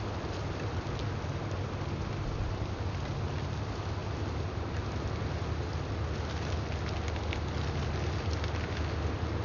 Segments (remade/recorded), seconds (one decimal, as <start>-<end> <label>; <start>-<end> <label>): 0.0-9.4 recorded